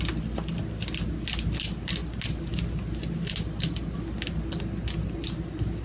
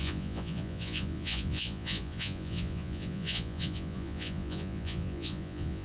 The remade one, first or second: second